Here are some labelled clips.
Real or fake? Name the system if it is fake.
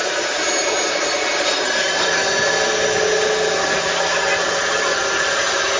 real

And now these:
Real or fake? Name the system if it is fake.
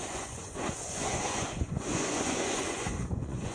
fake, vocoder, Vocos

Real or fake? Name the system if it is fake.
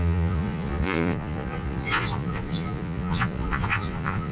fake, vocoder, Vocos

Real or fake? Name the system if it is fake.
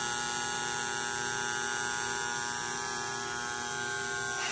real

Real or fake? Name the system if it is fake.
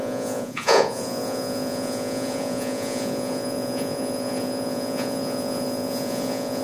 fake, vocoder, Vocos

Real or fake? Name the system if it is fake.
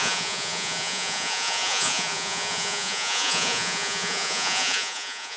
fake, vocoder, Vocos